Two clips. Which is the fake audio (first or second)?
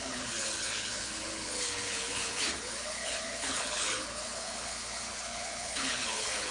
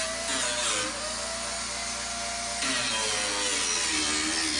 first